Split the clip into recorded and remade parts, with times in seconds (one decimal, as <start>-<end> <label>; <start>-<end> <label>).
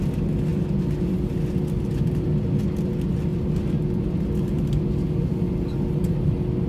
0.0-6.7 recorded